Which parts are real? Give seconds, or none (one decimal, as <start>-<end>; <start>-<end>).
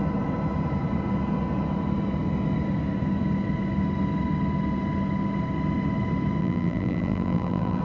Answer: 0.0-6.4